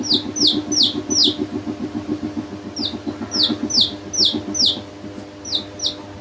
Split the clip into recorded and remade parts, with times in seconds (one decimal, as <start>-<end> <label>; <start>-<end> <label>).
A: 0.0-6.2 recorded